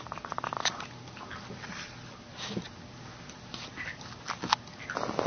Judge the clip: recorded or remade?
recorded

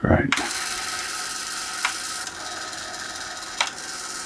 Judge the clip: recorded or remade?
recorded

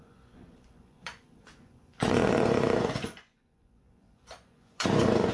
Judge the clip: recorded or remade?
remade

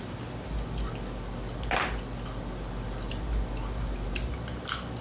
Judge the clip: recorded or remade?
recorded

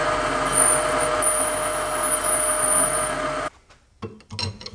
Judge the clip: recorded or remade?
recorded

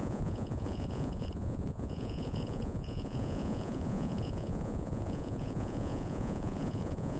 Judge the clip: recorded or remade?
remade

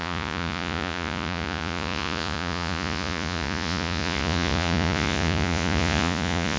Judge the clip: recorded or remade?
remade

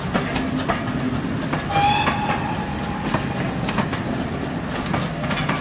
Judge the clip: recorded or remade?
recorded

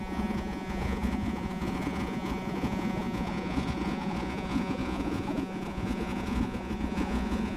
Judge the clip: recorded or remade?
remade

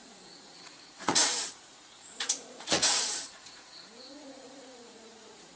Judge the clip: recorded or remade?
remade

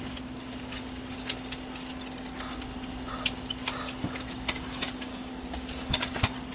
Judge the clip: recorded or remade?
recorded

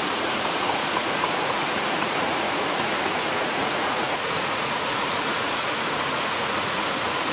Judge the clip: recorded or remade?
remade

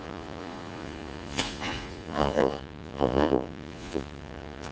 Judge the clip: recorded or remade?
remade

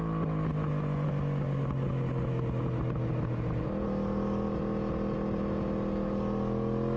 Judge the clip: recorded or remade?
recorded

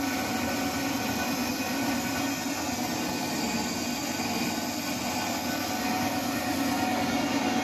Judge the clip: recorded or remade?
recorded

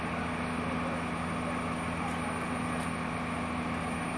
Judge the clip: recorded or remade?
recorded